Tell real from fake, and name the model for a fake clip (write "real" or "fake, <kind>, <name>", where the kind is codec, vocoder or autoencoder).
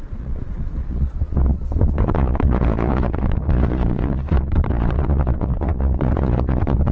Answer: fake, vocoder, Vocos